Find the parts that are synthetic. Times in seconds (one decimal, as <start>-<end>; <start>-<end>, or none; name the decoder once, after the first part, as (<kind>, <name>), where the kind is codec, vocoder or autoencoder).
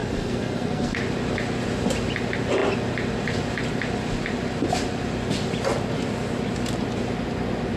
0.0-1.0 (codec, SNAC)